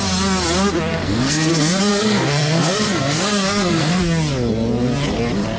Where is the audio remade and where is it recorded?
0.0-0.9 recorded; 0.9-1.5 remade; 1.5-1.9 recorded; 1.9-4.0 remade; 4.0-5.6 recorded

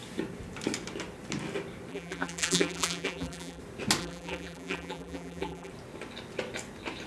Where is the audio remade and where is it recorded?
0.0-1.9 recorded; 1.9-3.6 remade; 3.6-4.0 recorded; 4.0-5.7 remade; 5.7-7.1 recorded

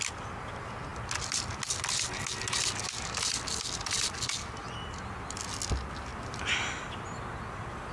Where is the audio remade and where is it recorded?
0.0-7.9 recorded

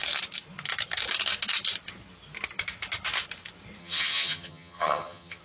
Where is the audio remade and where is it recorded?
0.0-3.8 recorded; 3.8-5.4 remade

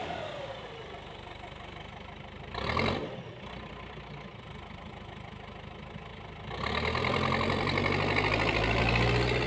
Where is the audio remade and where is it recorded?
0.0-4.9 remade; 4.9-6.1 recorded; 6.1-8.8 remade; 8.8-9.5 recorded

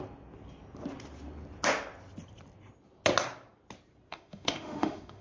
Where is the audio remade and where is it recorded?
0.0-4.1 recorded; 4.1-5.2 remade